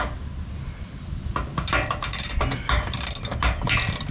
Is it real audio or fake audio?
real